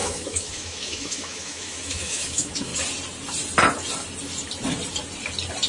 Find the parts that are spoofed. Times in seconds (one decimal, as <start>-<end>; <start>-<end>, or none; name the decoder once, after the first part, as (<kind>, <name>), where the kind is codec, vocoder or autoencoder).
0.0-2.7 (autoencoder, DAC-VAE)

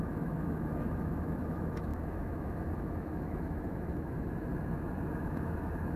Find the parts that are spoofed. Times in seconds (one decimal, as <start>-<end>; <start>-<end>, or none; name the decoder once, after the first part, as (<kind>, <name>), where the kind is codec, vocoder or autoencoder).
0.0-4.5 (autoencoder, DAC-VAE); 5.1-6.0

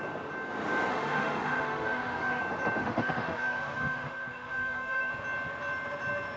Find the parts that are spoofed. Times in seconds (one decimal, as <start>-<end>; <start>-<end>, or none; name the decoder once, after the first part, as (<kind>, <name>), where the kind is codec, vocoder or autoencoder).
0.9-2.4 (autoencoder, DAC-VAE); 2.8-5.1

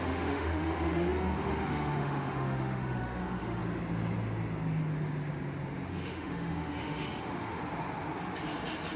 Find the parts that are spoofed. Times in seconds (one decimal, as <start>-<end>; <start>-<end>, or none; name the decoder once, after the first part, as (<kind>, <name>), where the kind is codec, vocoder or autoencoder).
0.0-3.6 (autoencoder, DAC-VAE); 5.9-7.6

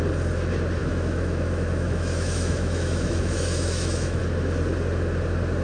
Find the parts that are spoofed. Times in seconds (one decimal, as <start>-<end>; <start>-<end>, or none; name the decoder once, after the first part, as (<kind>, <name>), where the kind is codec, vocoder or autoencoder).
0.8-4.2 (autoencoder, DAC-VAE)

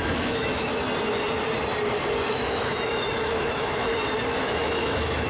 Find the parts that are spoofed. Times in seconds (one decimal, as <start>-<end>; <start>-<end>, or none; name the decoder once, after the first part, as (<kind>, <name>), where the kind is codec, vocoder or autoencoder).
0.0-0.7 (autoencoder, DAC-VAE); 2.3-3.9; 4.4-5.3